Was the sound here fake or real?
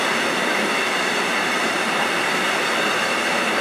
fake